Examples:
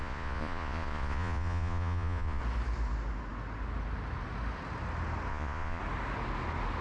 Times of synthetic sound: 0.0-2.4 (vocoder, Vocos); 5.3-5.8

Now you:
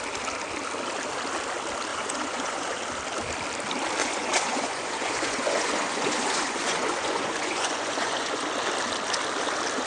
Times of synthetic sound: 1.9-2.8 (vocoder, Vocos); 4.0-8.4

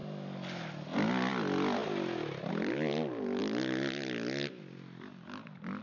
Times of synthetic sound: none

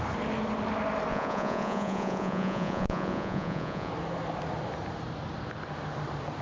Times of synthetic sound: 1.1-3.9 (vocoder, Vocos)

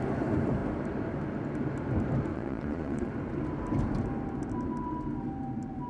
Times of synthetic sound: 2.3-3.1 (vocoder, Vocos)

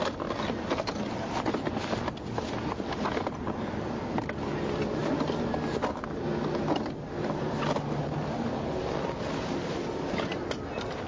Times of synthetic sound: none